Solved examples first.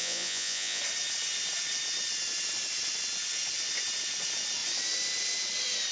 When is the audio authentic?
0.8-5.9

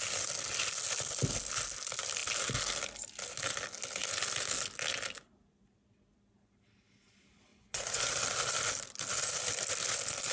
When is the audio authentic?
0.0-7.5; 8.0-10.3